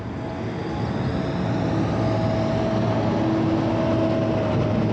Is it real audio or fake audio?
real